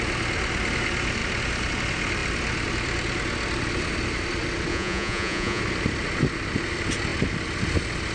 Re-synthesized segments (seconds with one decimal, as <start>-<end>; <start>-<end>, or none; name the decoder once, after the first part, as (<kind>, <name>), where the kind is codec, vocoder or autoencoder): 4.7-5.6 (vocoder, Vocos)

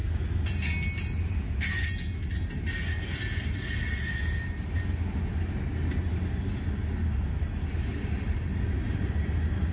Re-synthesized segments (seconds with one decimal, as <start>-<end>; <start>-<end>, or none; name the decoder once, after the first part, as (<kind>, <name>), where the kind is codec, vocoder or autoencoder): none

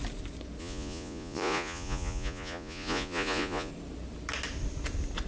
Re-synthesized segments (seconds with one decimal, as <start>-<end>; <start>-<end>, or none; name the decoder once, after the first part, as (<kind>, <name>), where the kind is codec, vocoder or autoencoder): 0.6-3.7 (vocoder, Vocos)

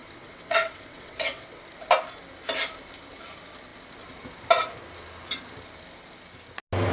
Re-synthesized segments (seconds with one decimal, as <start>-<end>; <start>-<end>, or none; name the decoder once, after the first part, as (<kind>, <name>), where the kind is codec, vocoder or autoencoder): 0.0-1.7 (vocoder, WaveNeXt)

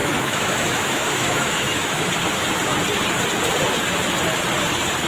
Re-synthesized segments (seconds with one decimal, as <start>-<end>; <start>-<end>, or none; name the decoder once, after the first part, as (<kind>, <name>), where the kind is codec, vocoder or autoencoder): 0.0-2.1 (autoencoder, DAC-VAE)

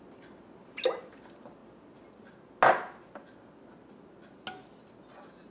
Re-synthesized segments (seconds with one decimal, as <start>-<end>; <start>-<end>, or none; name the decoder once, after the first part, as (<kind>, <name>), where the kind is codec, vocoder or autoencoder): none

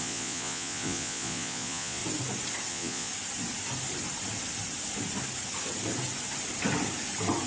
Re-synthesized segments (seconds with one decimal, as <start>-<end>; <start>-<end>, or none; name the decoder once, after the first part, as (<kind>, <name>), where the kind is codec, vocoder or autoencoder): 0.0-2.0 (vocoder, Vocos); 2.7-3.1